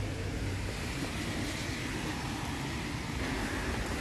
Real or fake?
fake